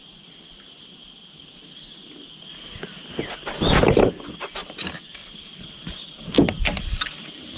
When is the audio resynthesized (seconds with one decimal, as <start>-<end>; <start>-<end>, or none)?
none